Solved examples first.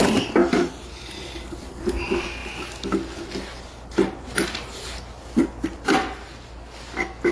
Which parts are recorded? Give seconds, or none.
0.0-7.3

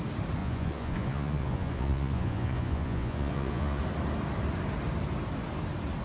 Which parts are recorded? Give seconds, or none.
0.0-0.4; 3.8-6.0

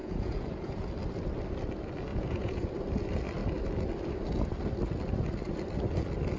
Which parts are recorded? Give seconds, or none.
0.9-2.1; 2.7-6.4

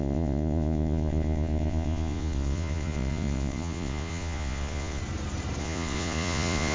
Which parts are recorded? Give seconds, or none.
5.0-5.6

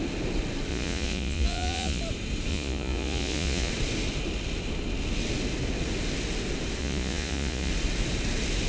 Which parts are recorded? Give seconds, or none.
0.0-0.7; 2.0-2.5; 3.7-6.8; 7.7-8.7

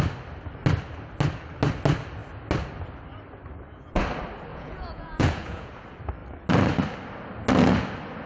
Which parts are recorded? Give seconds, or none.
0.0-4.5; 5.7-8.3

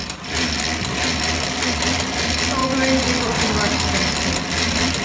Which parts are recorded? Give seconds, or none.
0.0-5.0

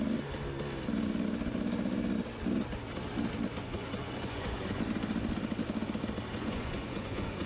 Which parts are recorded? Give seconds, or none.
0.0-3.6; 4.8-6.3